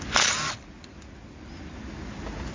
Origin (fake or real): real